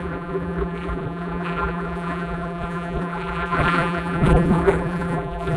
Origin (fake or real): fake